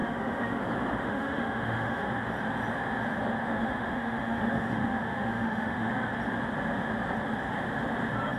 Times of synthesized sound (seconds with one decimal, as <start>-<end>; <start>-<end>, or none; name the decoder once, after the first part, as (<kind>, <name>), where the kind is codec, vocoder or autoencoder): 0.0-0.6 (autoencoder, DAC-VAE); 1.0-2.1; 3.4-5.9